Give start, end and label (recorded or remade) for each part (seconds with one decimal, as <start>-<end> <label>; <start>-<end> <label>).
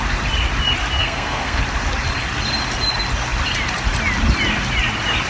0.0-1.0 recorded; 1.0-1.6 remade; 1.6-5.3 recorded